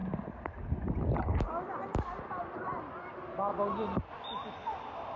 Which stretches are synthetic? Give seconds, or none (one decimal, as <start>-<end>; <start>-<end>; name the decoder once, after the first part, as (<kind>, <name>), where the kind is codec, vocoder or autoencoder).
0.0-1.3 (vocoder, BigVGAN v2); 1.9-2.6; 3.5-4.2